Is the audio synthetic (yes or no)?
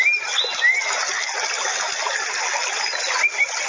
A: no